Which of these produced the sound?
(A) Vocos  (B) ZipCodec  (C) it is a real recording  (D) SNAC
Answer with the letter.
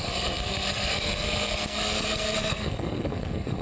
D